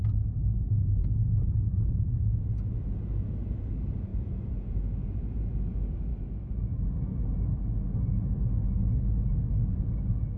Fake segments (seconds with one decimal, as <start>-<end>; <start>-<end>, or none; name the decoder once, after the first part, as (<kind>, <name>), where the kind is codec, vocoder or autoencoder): 1.2-3.3 (vocoder, Vocos); 4.1-5.3